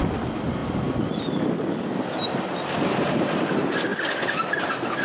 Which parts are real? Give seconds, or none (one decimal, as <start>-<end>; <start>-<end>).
0.0-5.0